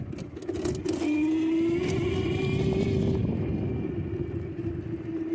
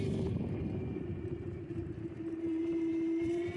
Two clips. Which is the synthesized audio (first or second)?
second